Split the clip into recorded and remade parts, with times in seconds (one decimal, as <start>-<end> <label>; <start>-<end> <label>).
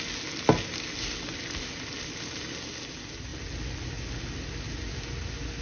0.0-5.6 recorded